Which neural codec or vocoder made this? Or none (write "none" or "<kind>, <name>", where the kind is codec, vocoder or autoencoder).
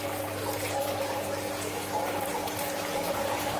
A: none